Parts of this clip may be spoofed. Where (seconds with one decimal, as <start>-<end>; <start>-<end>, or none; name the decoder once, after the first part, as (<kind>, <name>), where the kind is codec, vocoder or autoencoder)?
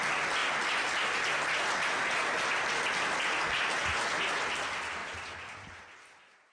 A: none